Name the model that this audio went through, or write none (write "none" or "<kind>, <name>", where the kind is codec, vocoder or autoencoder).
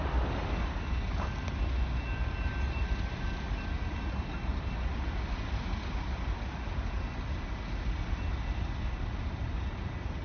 none